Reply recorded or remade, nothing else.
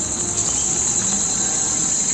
recorded